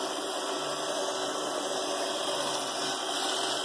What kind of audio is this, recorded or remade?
recorded